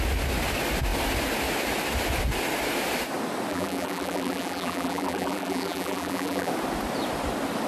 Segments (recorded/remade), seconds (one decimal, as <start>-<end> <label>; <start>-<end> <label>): 0.0-3.5 recorded; 3.5-6.5 remade; 6.5-7.7 recorded